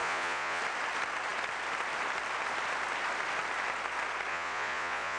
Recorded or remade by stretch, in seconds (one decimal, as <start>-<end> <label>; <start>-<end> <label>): 0.0-0.6 remade; 0.6-4.3 recorded; 4.3-5.2 remade